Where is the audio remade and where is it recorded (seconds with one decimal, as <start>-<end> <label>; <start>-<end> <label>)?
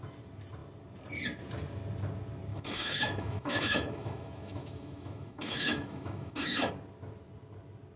0.0-2.5 recorded; 2.5-6.7 remade; 6.7-8.0 recorded